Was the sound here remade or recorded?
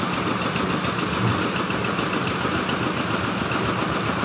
recorded